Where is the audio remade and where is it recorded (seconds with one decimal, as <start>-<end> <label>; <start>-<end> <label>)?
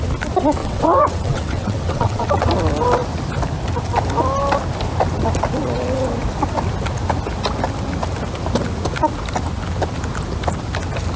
0.0-0.6 recorded; 0.6-2.5 remade; 2.5-11.2 recorded